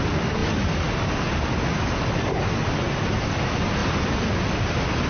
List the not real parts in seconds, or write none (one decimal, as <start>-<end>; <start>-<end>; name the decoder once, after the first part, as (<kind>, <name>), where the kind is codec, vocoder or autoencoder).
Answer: none

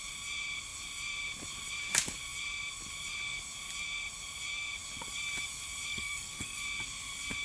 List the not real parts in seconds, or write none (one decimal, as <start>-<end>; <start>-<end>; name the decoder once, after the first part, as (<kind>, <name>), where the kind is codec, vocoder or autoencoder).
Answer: 5.9-6.6 (codec, SNAC)